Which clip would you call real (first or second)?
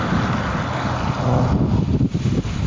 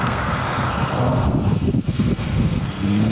first